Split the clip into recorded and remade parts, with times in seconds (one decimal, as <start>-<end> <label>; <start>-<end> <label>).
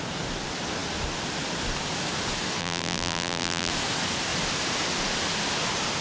0.0-2.6 recorded; 2.6-3.7 remade; 3.7-6.0 recorded